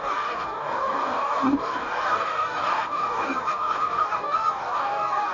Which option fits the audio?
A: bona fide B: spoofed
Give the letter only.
B